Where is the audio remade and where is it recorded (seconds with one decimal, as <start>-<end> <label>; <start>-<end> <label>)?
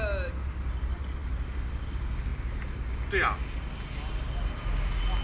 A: 0.0-5.2 recorded